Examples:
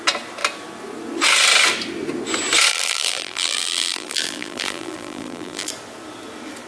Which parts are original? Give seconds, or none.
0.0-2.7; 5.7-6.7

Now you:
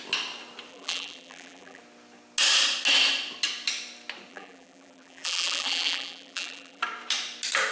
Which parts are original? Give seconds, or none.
0.0-0.7; 1.8-4.3; 6.8-7.7

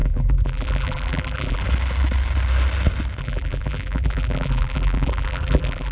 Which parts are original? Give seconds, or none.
1.6-3.2

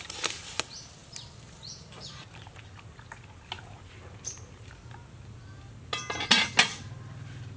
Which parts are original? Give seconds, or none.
0.0-7.6